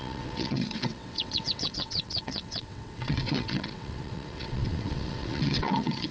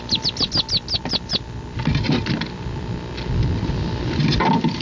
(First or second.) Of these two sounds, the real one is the second